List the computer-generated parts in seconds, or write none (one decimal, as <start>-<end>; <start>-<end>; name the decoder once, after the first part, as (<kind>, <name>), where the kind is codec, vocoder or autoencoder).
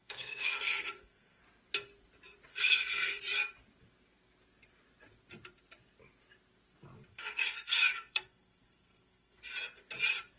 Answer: 0.0-1.4 (codec, SNAC); 2.5-3.2; 7.1-9.4